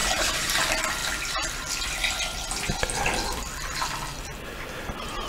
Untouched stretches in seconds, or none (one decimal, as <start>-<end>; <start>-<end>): 0.6-5.3